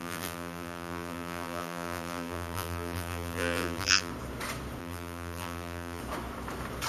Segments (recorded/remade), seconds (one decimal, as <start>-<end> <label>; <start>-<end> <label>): 0.0-4.1 remade; 4.1-4.8 recorded; 4.8-6.0 remade; 6.0-6.9 recorded